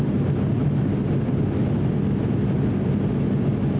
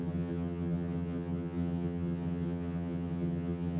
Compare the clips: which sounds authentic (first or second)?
first